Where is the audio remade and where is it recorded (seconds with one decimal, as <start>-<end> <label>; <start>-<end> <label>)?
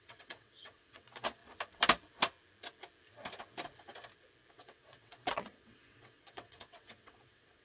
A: 0.0-1.4 remade; 1.4-4.5 recorded; 4.5-7.6 remade